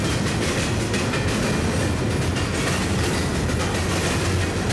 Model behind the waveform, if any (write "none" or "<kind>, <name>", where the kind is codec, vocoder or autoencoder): none